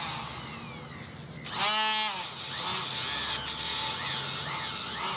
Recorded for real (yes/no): yes